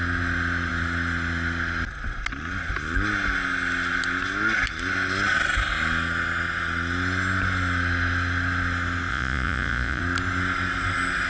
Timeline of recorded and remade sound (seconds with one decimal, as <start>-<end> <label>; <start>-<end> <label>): 0.0-9.1 recorded; 9.1-10.0 remade; 10.0-11.3 recorded